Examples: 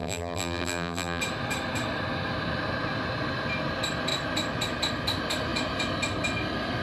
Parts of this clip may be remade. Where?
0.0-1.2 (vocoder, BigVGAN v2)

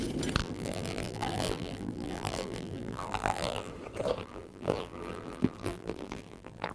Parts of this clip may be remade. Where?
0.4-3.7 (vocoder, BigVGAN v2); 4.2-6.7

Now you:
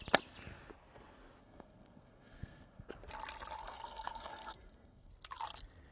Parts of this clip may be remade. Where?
1.4-2.9 (codec, SNAC); 3.6-5.1

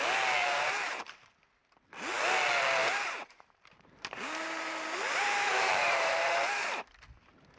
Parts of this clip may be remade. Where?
0.4-1.3 (vocoder, BigVGAN v2); 2.8-6.5